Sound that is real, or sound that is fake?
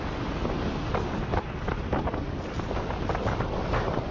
real